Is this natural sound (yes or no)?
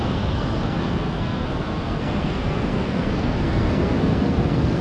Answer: no